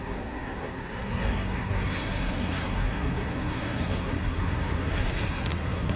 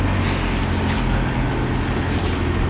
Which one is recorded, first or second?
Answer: second